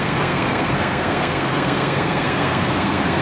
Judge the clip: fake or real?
fake